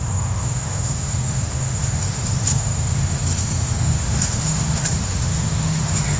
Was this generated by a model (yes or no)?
yes